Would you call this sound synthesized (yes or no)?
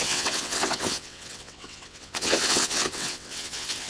yes